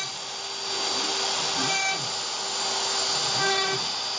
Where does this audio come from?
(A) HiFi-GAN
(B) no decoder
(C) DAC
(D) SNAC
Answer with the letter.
B